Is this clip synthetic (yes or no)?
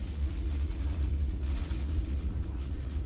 yes